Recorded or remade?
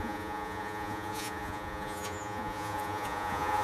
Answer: remade